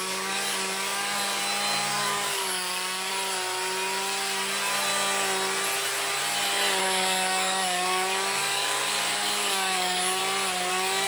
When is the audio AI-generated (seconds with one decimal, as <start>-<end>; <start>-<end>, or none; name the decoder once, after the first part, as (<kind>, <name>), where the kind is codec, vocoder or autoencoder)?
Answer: 0.0-1.4 (codec, DAC); 1.9-3.1; 6.8-10.2; 10.7-11.1